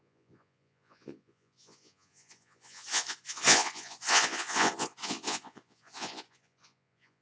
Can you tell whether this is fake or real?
fake